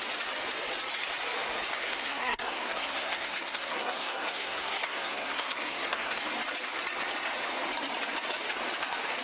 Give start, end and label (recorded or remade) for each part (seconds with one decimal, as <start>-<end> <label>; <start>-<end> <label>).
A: 0.0-1.8 recorded; 1.8-6.2 remade; 6.2-9.2 recorded